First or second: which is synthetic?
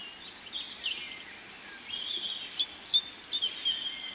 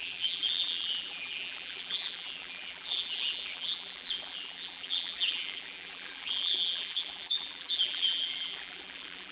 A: second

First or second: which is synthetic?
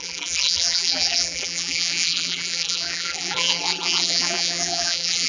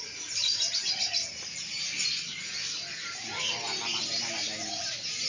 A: first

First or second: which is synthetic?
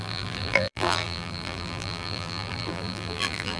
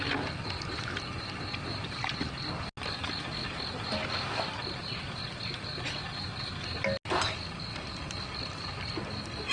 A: first